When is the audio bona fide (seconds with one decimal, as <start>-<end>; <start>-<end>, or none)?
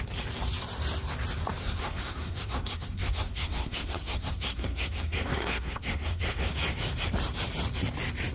0.0-1.6; 6.5-8.3